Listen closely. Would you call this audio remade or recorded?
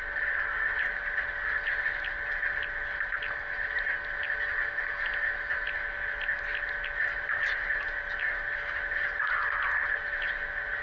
recorded